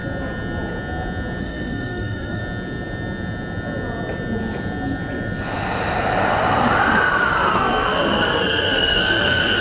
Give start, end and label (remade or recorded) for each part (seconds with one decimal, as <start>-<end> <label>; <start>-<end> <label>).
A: 0.0-1.4 recorded; 1.4-2.4 remade; 2.4-7.5 recorded; 7.5-9.6 remade